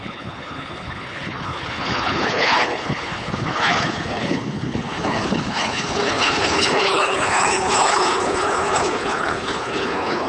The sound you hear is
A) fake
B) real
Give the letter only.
A